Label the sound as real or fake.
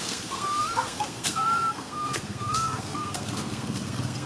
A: fake